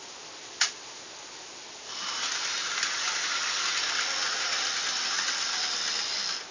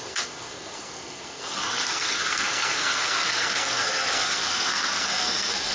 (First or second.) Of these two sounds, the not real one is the second